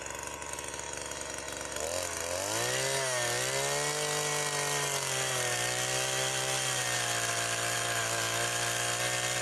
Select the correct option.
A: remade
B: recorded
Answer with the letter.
B